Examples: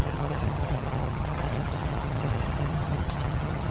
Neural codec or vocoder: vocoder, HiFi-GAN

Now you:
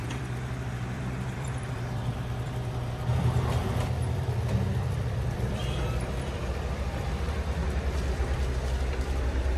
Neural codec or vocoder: vocoder, BigVGAN v2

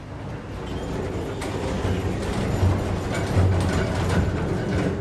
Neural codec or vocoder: none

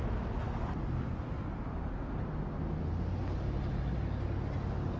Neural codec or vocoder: none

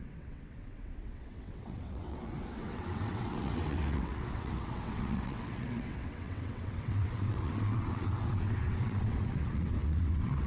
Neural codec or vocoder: vocoder, WaveNeXt